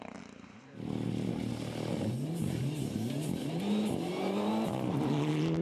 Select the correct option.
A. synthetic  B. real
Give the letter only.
B